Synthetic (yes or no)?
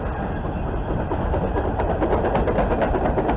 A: no